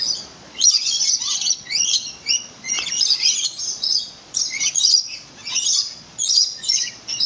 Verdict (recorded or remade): remade